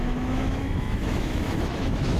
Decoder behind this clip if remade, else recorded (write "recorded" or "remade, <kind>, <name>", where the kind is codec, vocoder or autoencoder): remade, autoencoder, DAC-VAE